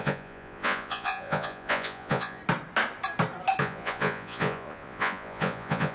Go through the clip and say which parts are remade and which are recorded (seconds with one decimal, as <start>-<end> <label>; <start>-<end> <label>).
0.0-2.4 remade; 2.4-3.6 recorded; 3.6-5.9 remade

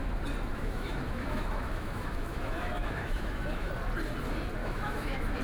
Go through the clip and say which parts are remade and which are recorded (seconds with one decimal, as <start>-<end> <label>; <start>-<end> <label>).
0.0-0.5 recorded; 0.5-3.7 remade; 3.7-4.6 recorded; 4.6-5.4 remade

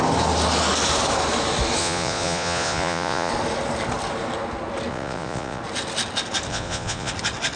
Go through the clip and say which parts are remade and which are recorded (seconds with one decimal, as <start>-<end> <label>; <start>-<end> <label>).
0.0-1.8 recorded; 1.8-3.3 remade; 3.3-4.9 recorded; 4.9-5.6 remade; 5.6-6.5 recorded; 6.5-7.1 remade; 7.1-7.6 recorded

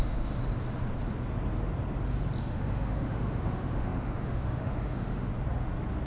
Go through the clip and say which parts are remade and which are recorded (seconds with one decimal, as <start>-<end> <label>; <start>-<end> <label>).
0.0-0.4 remade; 0.4-2.4 recorded; 2.4-5.3 remade; 5.3-6.1 recorded

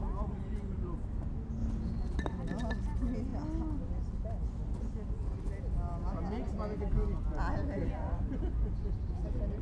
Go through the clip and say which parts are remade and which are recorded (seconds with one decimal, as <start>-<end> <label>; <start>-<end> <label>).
0.0-9.6 recorded

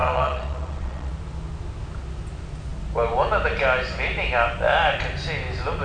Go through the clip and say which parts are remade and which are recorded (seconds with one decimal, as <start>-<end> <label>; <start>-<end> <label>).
0.0-1.1 remade; 1.1-5.8 recorded

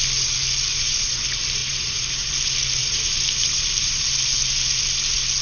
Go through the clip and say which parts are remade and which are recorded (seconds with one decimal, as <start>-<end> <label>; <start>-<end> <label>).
0.0-0.7 recorded; 0.7-1.2 remade; 1.2-1.6 recorded; 1.6-2.3 remade; 2.3-2.8 recorded; 2.8-4.0 remade; 4.0-5.4 recorded

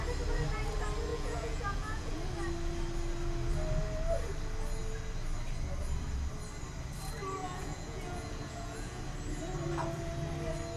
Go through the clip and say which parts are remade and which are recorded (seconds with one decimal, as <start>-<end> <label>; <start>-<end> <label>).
0.0-1.1 recorded; 1.1-2.1 remade; 2.1-7.4 recorded; 7.4-9.0 remade; 9.0-10.8 recorded